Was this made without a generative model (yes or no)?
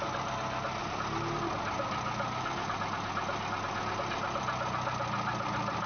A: yes